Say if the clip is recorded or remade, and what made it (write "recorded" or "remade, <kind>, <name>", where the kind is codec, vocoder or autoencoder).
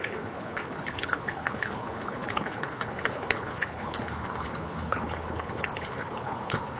remade, codec, HILCodec